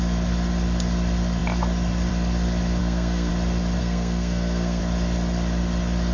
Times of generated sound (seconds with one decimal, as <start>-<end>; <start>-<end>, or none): 2.8-3.3; 3.8-4.8